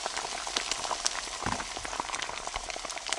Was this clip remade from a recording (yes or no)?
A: no